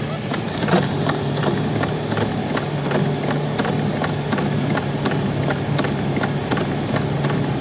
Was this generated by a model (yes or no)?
no